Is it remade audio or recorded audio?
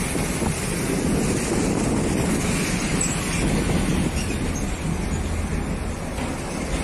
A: recorded